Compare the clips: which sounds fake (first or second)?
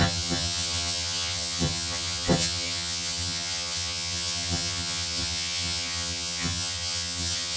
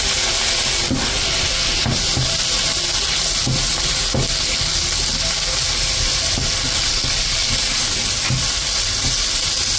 first